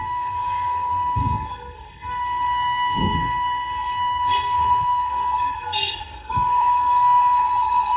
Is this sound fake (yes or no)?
yes